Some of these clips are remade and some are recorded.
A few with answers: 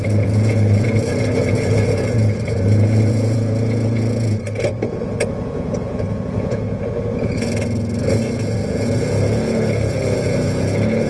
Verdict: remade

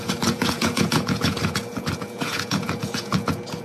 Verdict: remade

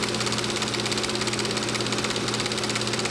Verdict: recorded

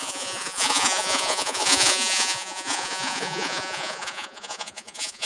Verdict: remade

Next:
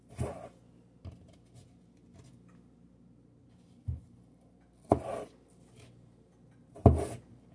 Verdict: recorded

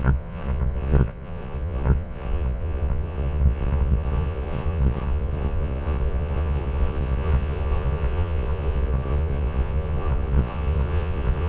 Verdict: remade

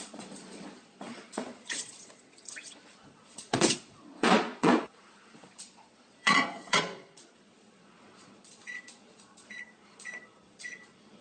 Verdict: remade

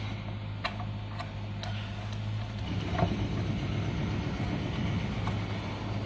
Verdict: recorded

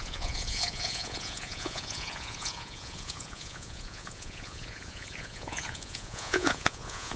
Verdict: remade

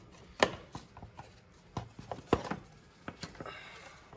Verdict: recorded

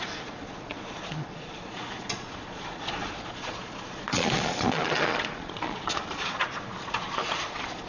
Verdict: remade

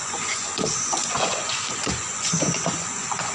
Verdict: remade